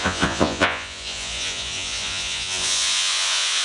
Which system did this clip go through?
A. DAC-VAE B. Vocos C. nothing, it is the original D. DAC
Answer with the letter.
B